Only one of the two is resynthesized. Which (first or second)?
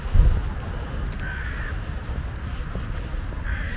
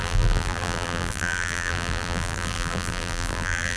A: second